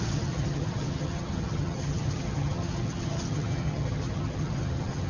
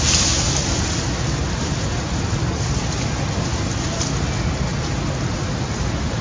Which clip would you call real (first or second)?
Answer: second